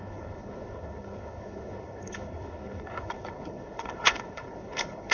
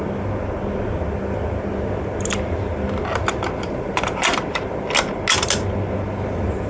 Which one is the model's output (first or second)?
first